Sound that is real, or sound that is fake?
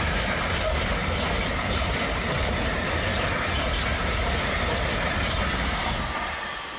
real